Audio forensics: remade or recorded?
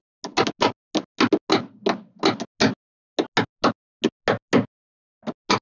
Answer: recorded